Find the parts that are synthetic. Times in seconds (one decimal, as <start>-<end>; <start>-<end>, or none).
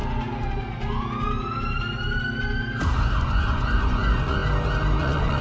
3.2-4.4; 5.0-5.4